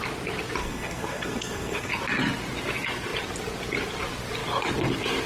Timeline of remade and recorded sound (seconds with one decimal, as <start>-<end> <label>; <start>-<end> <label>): 0.0-0.6 recorded; 0.6-1.9 remade; 1.9-5.3 recorded